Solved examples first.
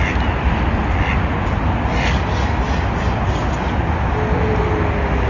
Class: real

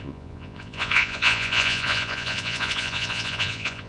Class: fake